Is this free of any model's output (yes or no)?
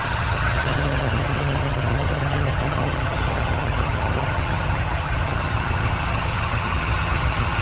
no